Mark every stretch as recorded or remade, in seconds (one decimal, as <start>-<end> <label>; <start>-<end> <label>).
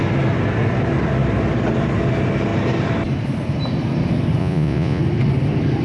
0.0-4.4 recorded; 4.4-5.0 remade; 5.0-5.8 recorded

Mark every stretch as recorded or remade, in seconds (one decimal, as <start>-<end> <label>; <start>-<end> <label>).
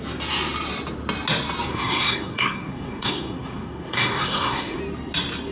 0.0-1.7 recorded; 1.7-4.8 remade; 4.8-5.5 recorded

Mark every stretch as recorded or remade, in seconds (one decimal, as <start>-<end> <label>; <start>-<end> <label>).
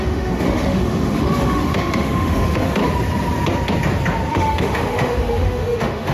0.0-2.8 remade; 2.8-4.3 recorded; 4.3-6.1 remade